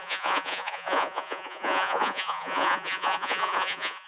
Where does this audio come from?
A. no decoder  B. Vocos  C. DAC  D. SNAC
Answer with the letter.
B